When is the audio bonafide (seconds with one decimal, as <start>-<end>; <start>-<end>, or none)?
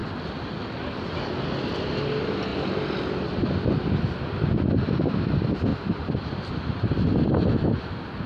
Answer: 1.0-2.5; 4.2-5.7; 6.5-8.3